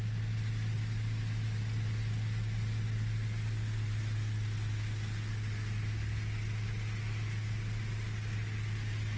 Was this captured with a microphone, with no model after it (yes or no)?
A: yes